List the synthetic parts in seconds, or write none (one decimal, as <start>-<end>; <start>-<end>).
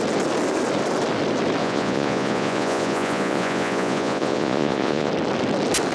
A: 1.6-5.1